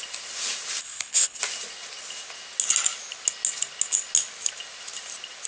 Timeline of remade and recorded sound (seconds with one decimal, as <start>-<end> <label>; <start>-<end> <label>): 0.0-0.8 recorded; 0.8-1.4 remade; 1.4-5.5 recorded